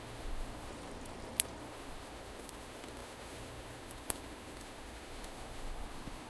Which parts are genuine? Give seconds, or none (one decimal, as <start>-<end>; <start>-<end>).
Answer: 0.7-1.6